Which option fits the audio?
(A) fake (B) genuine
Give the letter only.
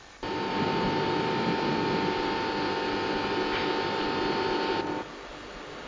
B